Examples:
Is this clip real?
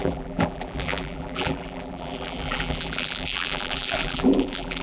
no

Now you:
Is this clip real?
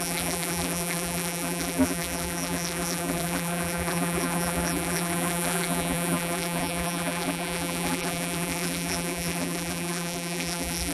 no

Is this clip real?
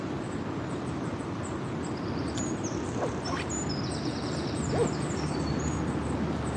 yes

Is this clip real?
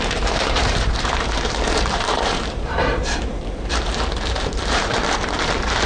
no